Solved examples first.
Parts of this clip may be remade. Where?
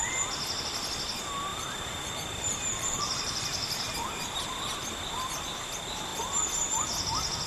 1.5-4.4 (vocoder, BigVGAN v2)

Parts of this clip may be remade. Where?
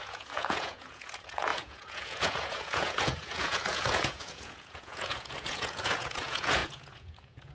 0.0-7.5 (vocoder, Vocos)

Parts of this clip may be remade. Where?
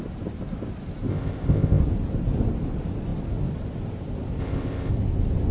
1.1-1.8 (codec, ZipCodec); 4.4-4.9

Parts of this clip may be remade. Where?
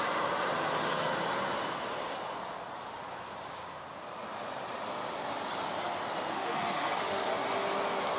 6.3-7.3 (autoencoder, DAC-VAE)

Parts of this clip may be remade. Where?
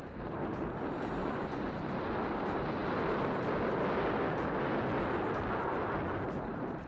1.2-1.7 (vocoder, Vocos)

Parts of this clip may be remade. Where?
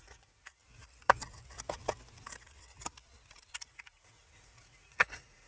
0.0-0.6 (vocoder, Vocos); 3.5-5.5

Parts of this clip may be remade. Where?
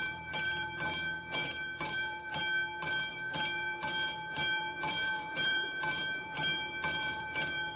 0.0-2.4 (vocoder, BigVGAN v2); 3.1-7.8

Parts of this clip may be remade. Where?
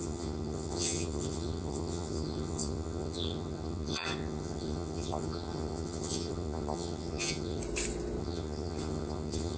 0.0-7.6 (vocoder, HiFi-GAN); 8.2-9.6